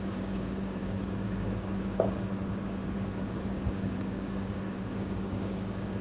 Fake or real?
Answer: fake